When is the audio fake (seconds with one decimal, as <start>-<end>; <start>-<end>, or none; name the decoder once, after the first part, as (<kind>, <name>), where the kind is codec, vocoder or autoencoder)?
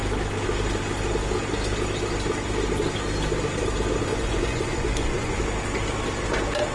4.1-5.4 (vocoder, Vocos)